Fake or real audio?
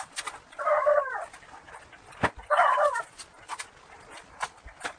real